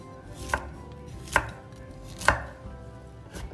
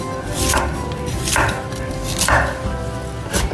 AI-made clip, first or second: second